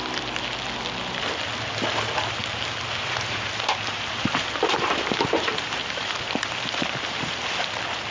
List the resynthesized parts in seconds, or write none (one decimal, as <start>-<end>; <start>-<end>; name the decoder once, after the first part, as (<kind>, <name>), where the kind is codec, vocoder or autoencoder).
2.4-7.2 (vocoder, BigVGAN v2)